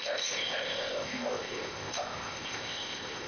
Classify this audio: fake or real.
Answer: fake